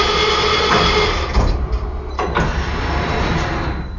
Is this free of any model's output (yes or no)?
yes